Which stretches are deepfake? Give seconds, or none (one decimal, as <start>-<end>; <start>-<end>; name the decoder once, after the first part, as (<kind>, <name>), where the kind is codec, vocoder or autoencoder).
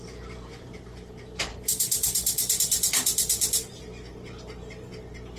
1.5-3.8 (vocoder, BigVGAN v2)